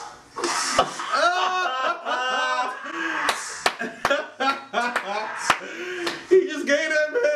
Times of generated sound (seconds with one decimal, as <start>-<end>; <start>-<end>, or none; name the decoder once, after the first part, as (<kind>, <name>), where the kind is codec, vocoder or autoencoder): none